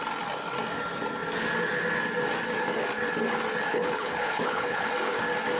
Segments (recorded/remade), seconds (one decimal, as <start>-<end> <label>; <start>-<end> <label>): 0.0-3.7 recorded; 3.7-4.9 remade; 4.9-5.6 recorded